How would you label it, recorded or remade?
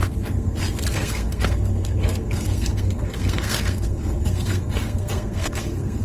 remade